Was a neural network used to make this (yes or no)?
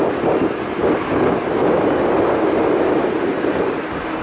no